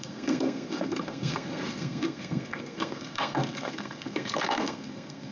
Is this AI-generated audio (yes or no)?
yes